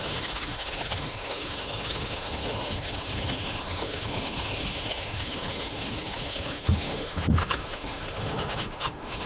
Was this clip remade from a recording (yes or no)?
yes